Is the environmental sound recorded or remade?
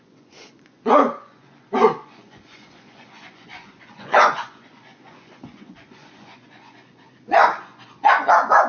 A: remade